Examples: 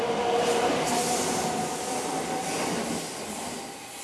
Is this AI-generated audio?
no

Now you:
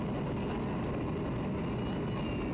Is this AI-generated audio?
no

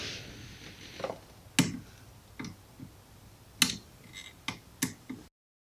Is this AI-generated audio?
no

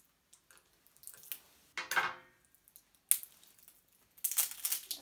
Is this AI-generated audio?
no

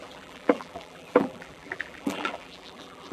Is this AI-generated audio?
yes